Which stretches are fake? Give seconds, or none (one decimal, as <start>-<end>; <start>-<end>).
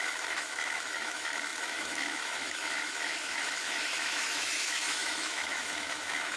0.0-6.4